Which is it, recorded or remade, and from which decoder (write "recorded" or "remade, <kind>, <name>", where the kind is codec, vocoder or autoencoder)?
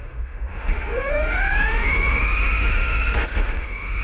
remade, autoencoder, DAC-VAE